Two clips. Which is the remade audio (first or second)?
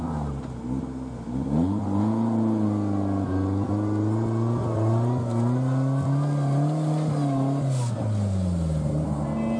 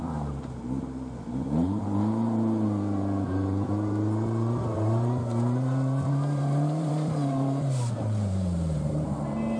second